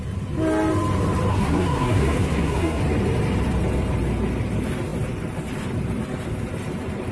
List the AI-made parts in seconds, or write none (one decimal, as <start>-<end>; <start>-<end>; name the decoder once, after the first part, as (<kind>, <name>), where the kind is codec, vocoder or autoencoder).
1.3-2.8 (codec, SNAC)